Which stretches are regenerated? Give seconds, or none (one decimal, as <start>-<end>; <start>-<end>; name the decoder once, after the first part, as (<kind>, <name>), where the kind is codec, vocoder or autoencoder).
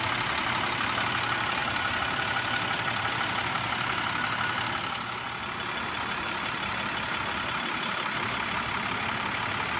none